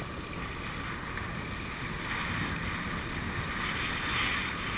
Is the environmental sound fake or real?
real